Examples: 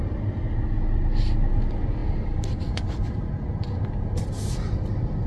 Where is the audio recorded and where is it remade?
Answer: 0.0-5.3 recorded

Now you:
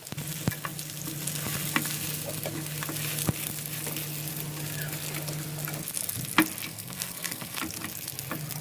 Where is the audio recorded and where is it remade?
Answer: 0.0-6.7 recorded; 6.7-7.6 remade; 7.6-8.6 recorded

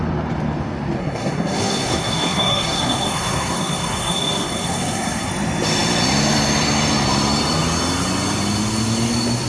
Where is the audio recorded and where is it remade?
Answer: 0.0-1.0 recorded; 1.0-5.3 remade; 5.3-9.5 recorded

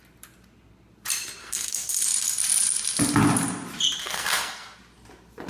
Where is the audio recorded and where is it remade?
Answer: 0.0-1.4 recorded; 1.4-1.9 remade; 1.9-4.0 recorded; 4.0-4.8 remade; 4.8-5.5 recorded